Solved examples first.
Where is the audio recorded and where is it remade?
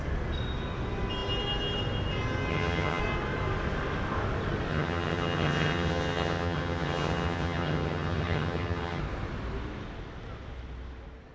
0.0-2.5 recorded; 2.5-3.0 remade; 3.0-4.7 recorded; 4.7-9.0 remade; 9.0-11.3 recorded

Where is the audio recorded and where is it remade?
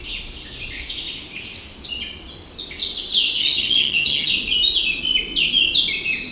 0.0-3.4 recorded; 3.4-4.3 remade; 4.3-6.3 recorded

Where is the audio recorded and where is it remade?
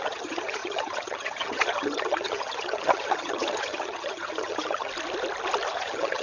0.0-4.9 remade; 4.9-5.7 recorded; 5.7-6.2 remade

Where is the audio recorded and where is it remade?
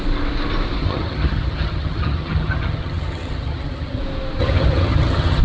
0.0-0.8 recorded; 0.8-4.0 remade; 4.0-4.4 recorded; 4.4-5.4 remade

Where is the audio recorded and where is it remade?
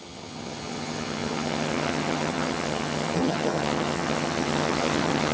0.0-5.3 remade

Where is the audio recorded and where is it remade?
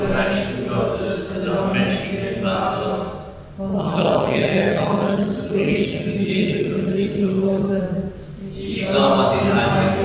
0.0-3.7 recorded; 3.7-7.8 remade; 7.8-10.0 recorded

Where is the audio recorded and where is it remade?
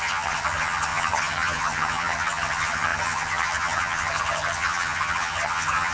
0.0-5.9 remade